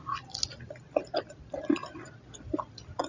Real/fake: real